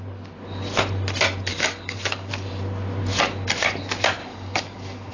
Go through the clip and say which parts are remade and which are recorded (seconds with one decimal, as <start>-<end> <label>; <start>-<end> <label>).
0.0-1.5 recorded; 1.5-2.3 remade; 2.3-4.2 recorded; 4.2-5.1 remade

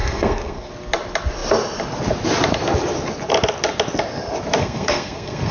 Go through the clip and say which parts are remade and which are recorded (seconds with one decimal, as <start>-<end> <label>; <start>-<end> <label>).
0.0-0.7 remade; 0.7-4.6 recorded; 4.6-5.5 remade

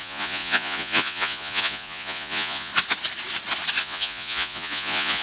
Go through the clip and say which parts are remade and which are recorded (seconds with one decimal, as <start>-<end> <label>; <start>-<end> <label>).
0.0-2.7 remade; 2.7-3.8 recorded; 3.8-5.2 remade

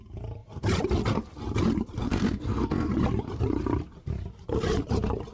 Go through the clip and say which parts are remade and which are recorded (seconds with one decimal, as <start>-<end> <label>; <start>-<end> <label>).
0.0-2.0 recorded; 2.0-2.9 remade; 2.9-5.3 recorded

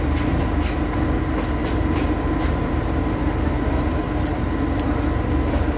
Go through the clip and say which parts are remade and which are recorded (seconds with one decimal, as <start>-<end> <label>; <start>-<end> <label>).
0.0-1.6 recorded; 1.6-4.4 remade; 4.4-5.8 recorded